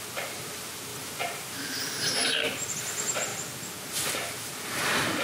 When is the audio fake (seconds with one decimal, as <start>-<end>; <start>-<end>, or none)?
none